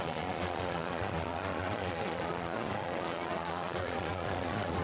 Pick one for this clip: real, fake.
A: fake